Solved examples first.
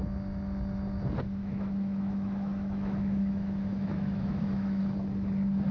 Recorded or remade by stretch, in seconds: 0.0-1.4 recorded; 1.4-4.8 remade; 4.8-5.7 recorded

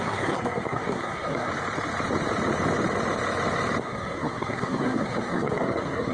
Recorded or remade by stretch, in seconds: 0.0-1.5 remade; 1.5-3.8 recorded; 3.8-6.1 remade